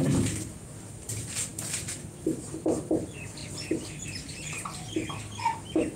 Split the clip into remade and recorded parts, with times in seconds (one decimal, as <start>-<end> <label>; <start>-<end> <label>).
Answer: 0.0-3.4 recorded; 3.4-5.2 remade; 5.2-6.0 recorded